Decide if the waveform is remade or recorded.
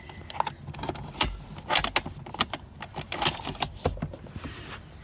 recorded